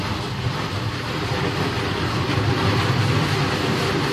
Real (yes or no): yes